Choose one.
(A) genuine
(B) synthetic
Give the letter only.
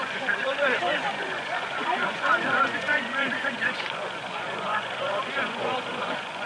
B